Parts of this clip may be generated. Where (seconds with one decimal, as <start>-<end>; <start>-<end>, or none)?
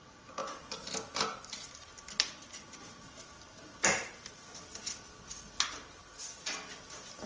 none